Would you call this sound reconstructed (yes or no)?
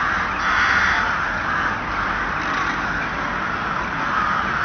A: no